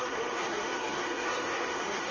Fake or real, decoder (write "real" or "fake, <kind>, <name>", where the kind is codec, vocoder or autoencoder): fake, codec, SNAC